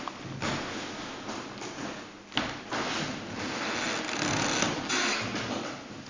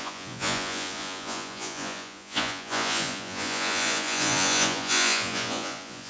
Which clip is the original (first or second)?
first